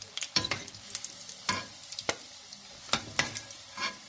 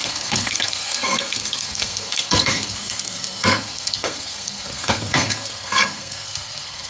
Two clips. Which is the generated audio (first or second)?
second